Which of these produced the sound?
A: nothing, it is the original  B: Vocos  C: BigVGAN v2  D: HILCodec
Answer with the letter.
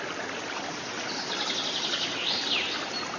A